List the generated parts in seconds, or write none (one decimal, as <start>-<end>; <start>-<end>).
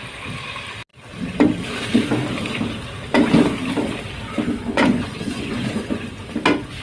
4.6-6.2